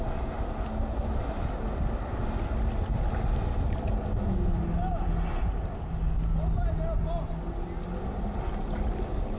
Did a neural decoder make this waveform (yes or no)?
no